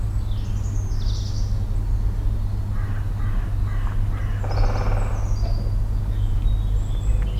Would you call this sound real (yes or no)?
yes